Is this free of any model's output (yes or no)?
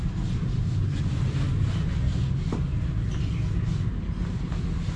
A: yes